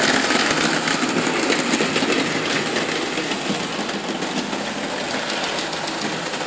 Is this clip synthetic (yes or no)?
no